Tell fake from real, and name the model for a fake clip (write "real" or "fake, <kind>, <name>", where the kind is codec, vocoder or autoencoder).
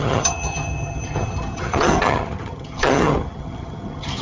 fake, vocoder, HiFi-GAN